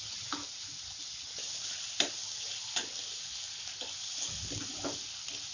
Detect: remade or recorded recorded